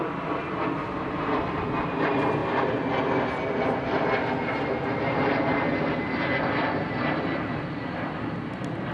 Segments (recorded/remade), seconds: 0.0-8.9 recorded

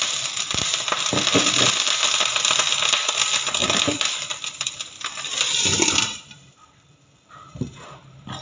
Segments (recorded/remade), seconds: 0.0-3.6 recorded; 3.6-7.5 remade; 7.5-8.4 recorded